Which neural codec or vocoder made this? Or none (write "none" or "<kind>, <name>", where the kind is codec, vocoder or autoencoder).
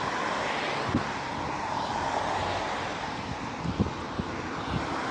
none